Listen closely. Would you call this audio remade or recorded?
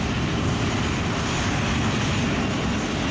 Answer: recorded